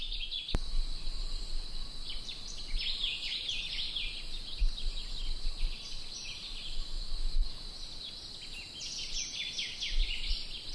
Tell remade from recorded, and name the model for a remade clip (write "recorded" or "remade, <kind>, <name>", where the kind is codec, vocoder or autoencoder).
recorded